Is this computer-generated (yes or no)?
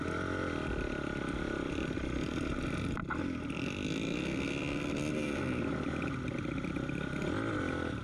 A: no